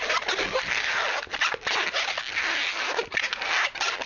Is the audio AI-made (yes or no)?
no